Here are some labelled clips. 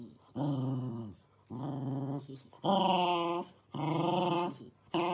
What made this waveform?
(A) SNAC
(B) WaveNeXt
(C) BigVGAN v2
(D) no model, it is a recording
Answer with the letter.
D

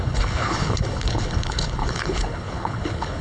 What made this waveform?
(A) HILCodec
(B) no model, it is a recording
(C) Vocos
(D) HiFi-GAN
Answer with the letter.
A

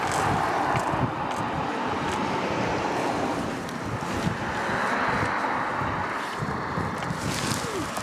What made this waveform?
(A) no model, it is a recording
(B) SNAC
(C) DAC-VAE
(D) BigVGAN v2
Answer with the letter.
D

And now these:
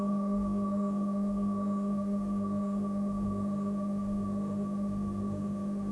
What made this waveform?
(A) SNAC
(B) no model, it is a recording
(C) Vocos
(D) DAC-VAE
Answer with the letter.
D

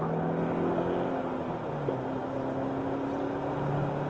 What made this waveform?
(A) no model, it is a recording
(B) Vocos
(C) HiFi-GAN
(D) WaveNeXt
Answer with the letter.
A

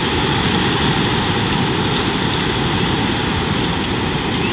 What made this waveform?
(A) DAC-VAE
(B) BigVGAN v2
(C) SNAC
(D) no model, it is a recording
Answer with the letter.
D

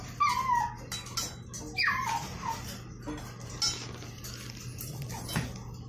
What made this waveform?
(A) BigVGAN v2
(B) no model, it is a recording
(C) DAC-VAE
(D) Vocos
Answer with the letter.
B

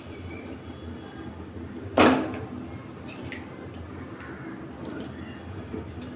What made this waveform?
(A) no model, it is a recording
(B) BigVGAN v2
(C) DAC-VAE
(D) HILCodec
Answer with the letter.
A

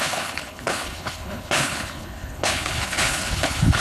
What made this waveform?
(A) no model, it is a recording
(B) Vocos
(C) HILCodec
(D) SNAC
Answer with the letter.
C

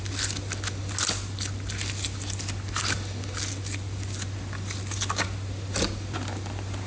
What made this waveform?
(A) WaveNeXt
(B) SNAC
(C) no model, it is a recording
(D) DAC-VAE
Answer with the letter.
C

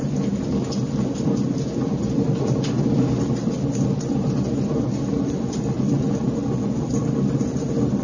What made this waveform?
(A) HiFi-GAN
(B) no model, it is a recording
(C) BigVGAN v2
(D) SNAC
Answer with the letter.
B